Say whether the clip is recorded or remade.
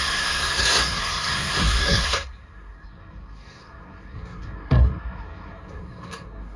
remade